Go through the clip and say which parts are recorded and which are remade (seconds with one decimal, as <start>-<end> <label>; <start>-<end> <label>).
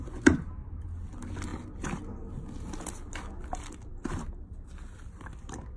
0.0-5.8 recorded